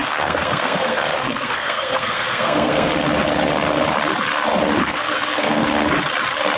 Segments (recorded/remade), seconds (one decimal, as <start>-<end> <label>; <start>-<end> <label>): 0.0-2.9 remade; 2.9-4.8 recorded; 4.8-5.6 remade; 5.6-6.6 recorded